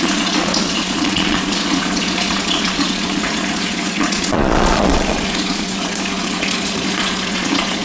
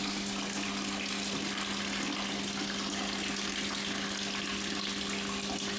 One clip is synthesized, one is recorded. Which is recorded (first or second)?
second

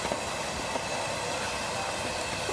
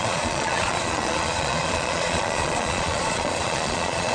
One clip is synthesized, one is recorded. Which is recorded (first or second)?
first